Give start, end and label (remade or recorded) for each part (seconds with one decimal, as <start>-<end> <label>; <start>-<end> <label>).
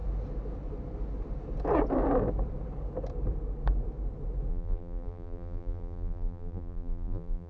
0.0-4.5 recorded; 4.5-7.5 remade